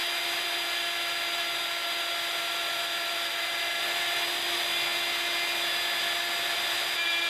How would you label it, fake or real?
real